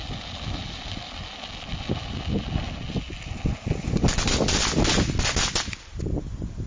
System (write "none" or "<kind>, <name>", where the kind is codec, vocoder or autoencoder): none